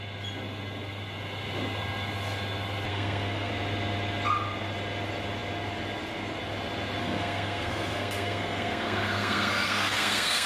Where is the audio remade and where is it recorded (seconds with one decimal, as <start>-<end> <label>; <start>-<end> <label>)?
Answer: 0.0-2.9 recorded; 2.9-3.5 remade; 3.5-7.0 recorded; 7.0-10.5 remade